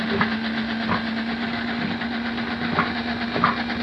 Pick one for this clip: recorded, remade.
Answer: recorded